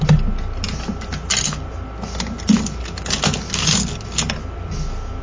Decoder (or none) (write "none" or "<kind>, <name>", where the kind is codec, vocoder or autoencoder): none